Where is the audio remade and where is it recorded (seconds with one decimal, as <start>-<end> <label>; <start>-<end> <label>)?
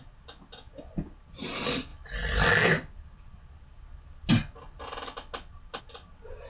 0.0-6.5 recorded